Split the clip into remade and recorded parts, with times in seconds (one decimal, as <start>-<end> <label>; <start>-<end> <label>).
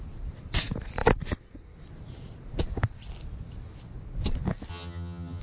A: 0.0-4.7 recorded; 4.7-5.4 remade